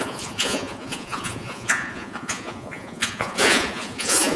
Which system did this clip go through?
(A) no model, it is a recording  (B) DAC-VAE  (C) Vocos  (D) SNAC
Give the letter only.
C